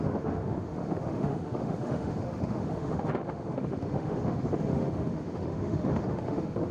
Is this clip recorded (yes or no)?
no